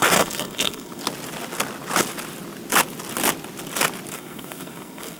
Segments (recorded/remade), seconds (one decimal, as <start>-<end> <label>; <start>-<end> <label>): 0.0-1.0 remade; 1.0-4.1 recorded; 4.1-5.2 remade